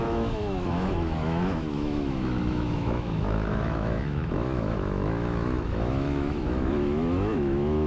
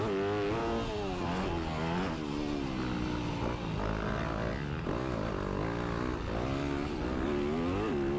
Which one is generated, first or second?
first